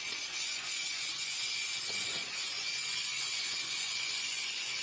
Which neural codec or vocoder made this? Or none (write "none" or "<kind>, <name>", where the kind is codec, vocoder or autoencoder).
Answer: vocoder, Vocos